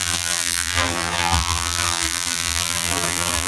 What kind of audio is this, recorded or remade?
remade